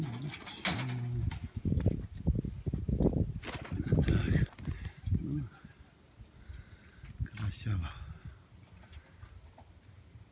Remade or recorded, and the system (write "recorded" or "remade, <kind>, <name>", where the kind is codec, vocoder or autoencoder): recorded